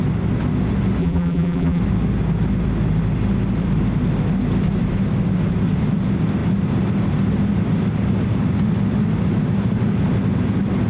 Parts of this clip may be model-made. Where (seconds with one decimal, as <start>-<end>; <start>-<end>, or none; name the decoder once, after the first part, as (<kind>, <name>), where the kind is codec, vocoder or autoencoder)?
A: 1.0-1.8 (vocoder, BigVGAN v2)